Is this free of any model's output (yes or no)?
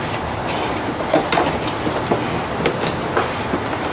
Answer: yes